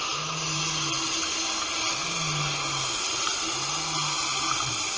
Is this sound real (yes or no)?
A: yes